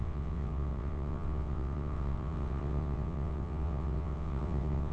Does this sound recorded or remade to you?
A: remade